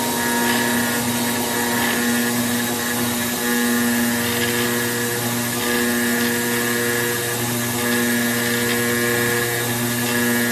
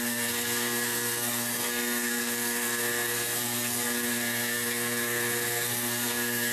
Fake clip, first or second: second